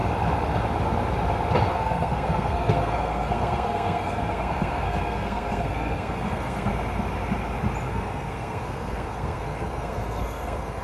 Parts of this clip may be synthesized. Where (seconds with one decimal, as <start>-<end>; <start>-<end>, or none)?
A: 1.7-6.7; 7.9-10.8